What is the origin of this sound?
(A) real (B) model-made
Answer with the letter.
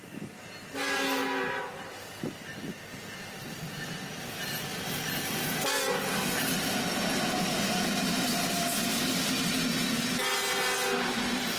A